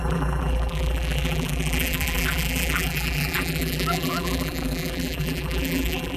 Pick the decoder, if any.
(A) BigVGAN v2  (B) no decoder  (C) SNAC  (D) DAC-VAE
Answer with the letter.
A